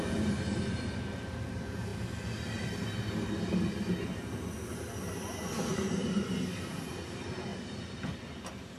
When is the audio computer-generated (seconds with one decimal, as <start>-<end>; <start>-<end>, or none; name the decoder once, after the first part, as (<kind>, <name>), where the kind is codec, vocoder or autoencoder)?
none